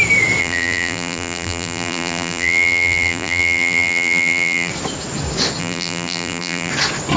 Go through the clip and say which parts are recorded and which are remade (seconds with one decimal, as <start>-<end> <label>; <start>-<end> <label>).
0.0-0.4 recorded; 0.4-4.7 remade; 4.7-5.6 recorded; 5.6-6.7 remade; 6.7-7.2 recorded